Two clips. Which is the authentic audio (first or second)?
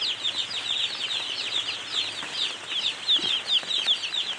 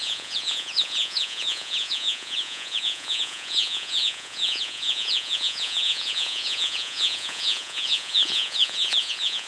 first